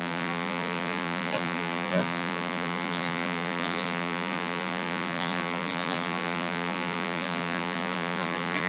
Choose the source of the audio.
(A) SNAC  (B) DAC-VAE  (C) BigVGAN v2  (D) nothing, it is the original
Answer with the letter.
C